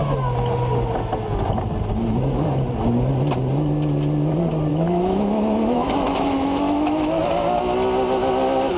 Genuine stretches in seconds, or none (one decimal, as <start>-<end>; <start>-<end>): 0.0-4.7; 7.2-8.8